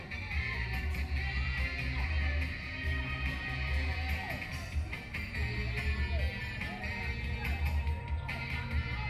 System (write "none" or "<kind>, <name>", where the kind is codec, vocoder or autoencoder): none